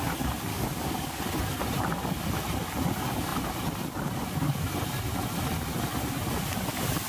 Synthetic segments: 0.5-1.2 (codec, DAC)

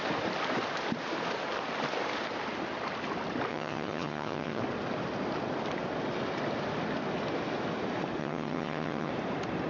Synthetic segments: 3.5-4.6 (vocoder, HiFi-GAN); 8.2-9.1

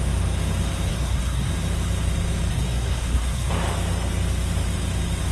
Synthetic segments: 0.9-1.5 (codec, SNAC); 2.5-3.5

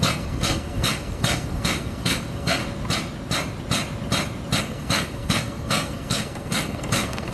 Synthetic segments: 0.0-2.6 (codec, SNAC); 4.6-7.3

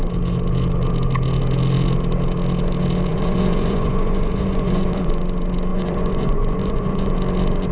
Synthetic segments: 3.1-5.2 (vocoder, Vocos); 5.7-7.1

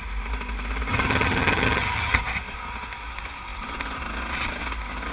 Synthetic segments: 0.9-2.2 (vocoder, HiFi-GAN)

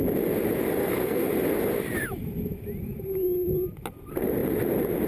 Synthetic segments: 0.8-1.3 (codec, SNAC)

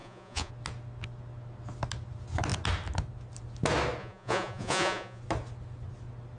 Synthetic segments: 0.0-0.5 (vocoder, Vocos); 4.0-5.2